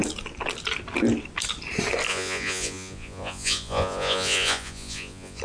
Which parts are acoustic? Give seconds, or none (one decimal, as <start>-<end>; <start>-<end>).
0.0-2.1